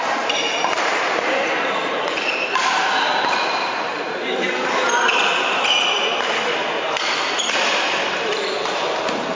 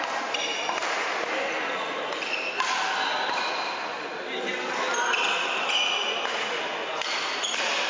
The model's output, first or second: first